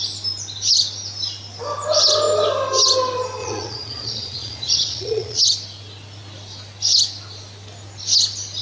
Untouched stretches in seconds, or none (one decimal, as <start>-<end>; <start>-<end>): 0.0-3.4; 5.4-8.6